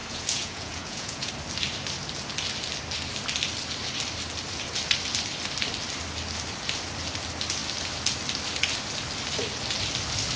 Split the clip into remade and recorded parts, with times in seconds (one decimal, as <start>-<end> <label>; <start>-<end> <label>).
0.0-1.3 remade; 1.3-10.4 recorded